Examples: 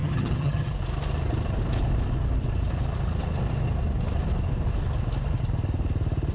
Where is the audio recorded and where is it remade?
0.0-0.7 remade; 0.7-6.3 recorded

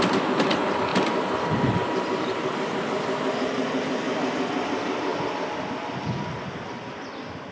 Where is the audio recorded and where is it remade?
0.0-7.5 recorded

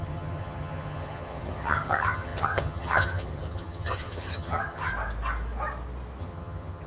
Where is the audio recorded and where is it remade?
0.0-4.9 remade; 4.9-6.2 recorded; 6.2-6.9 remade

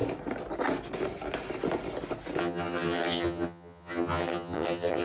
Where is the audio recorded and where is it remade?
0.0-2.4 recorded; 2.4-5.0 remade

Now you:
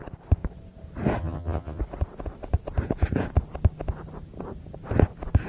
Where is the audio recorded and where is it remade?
0.0-1.2 recorded; 1.2-1.8 remade; 1.8-5.5 recorded

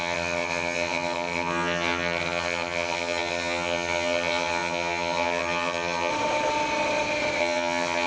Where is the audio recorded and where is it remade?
0.0-6.1 remade; 6.1-7.4 recorded; 7.4-8.1 remade